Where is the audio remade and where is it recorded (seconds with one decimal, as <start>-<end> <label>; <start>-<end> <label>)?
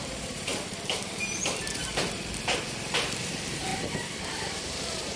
0.0-3.7 remade; 3.7-4.5 recorded; 4.5-5.2 remade